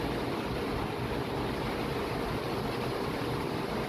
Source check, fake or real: real